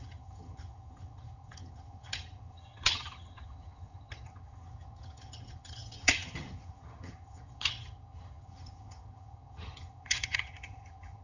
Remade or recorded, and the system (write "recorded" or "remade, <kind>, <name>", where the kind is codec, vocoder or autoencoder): remade, vocoder, HiFi-GAN